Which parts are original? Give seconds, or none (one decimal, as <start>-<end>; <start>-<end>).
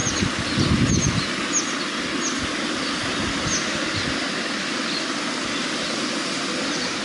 0.0-7.0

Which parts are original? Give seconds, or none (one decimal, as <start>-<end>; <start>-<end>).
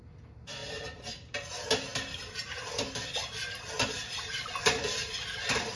0.0-0.6; 1.5-1.9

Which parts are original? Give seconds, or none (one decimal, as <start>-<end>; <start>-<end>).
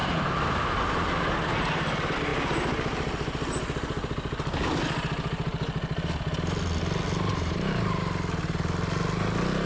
1.4-7.3; 8.0-9.7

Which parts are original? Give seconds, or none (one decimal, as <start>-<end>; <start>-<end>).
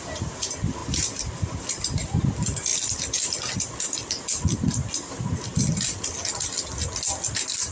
2.7-7.3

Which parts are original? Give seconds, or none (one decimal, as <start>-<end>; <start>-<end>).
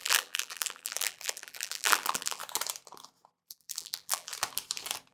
2.4-3.3; 4.3-5.1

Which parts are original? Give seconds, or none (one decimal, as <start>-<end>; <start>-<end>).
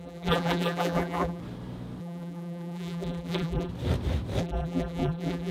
1.4-2.0; 3.7-4.4